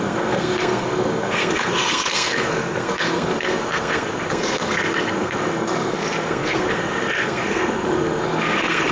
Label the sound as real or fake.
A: fake